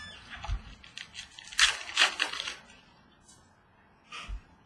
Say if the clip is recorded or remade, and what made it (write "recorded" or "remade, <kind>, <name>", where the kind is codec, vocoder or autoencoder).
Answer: recorded